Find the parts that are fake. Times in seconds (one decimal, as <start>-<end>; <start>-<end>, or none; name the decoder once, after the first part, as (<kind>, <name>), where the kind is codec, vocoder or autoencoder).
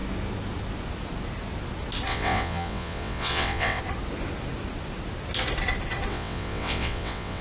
2.1-3.8 (vocoder, WaveNeXt); 6.1-7.4